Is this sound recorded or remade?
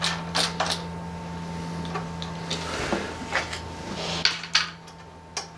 recorded